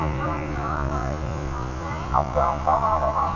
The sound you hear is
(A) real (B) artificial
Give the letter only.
B